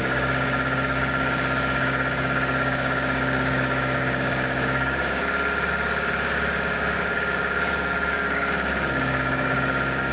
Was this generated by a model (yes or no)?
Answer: yes